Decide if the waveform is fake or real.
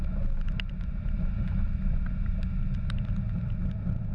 real